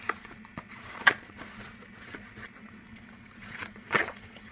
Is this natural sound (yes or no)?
no